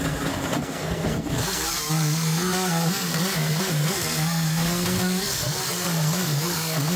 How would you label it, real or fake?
fake